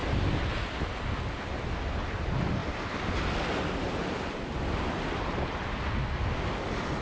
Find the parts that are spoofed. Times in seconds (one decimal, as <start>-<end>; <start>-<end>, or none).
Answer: none